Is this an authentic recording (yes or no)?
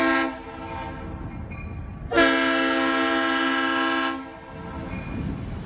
yes